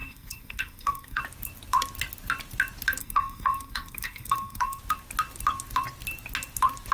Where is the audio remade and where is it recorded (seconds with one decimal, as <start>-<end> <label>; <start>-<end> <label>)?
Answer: 0.0-1.2 remade; 1.2-3.0 recorded; 3.0-4.8 remade; 4.8-6.9 recorded